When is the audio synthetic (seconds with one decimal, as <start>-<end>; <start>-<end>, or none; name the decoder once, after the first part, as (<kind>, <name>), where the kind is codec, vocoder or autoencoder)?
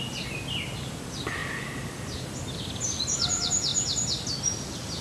none